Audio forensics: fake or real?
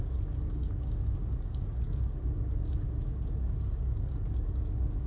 fake